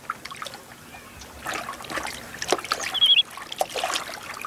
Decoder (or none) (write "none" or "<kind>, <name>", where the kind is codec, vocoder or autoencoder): none